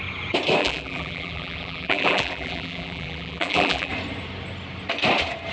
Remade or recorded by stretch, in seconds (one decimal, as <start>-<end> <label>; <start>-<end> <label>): 0.0-0.6 recorded; 0.6-3.9 remade; 3.9-5.5 recorded